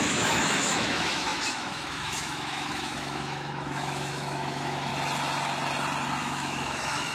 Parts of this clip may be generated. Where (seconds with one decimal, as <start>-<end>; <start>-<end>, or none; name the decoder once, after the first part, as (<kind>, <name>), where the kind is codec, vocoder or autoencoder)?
0.0-4.9 (autoencoder, DAC-VAE); 6.2-7.1